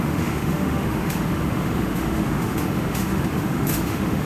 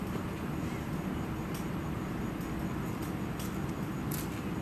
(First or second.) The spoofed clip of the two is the first